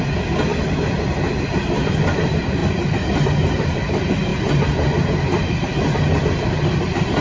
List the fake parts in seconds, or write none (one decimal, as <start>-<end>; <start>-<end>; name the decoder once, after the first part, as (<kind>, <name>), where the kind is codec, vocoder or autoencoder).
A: none